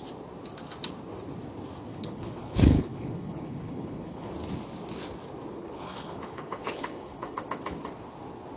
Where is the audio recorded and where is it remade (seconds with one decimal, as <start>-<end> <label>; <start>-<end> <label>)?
0.0-1.9 recorded; 1.9-4.3 remade; 4.3-5.6 recorded; 5.6-7.4 remade; 7.4-8.6 recorded